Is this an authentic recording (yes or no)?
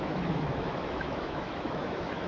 no